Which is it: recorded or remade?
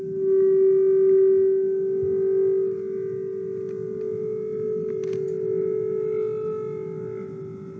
recorded